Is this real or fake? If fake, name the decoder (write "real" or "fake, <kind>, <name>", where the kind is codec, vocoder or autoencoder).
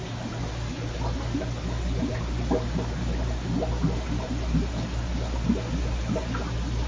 real